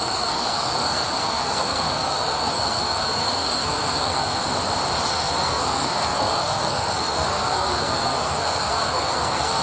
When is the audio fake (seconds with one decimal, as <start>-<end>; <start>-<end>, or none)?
0.0-4.4; 5.1-9.6